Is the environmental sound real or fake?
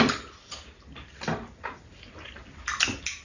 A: real